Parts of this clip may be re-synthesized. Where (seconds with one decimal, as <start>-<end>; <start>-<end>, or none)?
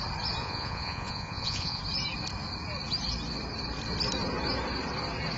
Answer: 0.4-1.8